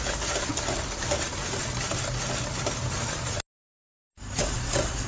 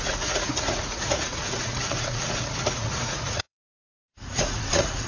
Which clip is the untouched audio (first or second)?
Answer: first